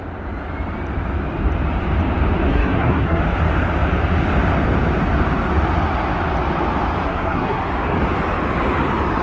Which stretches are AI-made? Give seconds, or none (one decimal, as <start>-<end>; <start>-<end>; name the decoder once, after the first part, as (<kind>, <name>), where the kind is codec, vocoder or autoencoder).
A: 2.5-3.2 (codec, SNAC); 7.0-7.6